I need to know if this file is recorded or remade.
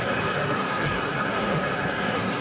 remade